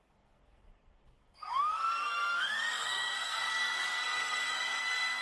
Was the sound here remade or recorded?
remade